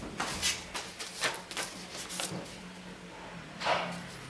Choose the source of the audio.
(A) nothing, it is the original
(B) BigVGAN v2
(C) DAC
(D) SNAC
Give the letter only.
A